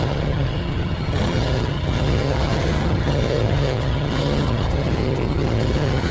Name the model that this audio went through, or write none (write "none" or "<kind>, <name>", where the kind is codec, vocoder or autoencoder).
vocoder, HiFi-GAN